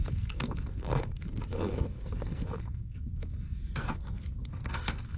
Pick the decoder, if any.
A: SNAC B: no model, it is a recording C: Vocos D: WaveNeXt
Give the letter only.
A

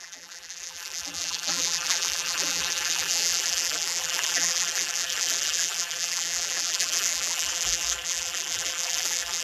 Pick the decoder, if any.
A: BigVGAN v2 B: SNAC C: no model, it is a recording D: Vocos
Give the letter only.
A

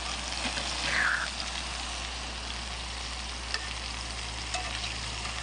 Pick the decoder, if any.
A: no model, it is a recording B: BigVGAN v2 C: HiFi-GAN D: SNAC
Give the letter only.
A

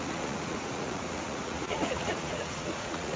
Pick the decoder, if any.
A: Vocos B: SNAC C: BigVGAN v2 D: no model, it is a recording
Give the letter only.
A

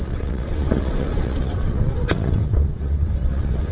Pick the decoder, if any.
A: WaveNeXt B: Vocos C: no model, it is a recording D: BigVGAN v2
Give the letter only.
A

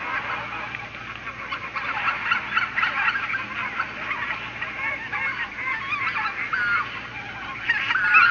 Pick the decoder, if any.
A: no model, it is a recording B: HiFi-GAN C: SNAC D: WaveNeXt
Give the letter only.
A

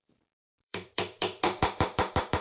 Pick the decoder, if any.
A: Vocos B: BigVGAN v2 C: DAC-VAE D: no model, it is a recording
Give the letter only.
B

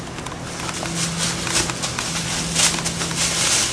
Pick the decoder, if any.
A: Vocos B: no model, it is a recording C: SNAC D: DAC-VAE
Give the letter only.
B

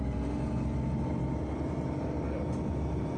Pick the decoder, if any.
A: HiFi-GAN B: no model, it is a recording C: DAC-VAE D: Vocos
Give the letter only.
B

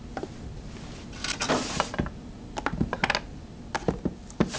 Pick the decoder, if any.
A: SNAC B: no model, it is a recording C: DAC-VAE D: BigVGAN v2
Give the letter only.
B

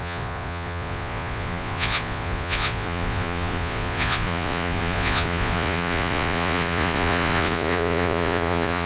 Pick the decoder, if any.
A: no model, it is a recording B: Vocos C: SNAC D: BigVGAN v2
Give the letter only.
B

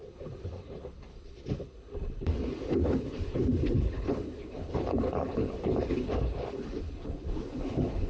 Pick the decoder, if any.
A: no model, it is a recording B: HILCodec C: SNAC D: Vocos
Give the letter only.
B